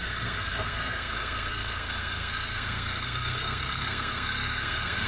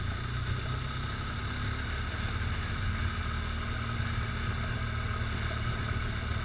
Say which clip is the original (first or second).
second